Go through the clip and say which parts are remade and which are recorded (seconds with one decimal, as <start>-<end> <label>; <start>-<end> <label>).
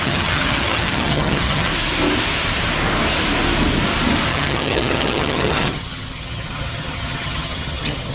0.0-1.7 remade; 1.7-4.3 recorded; 4.3-8.1 remade